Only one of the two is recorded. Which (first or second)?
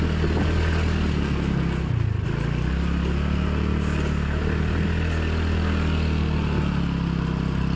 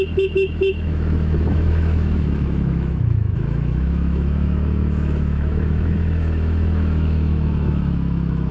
first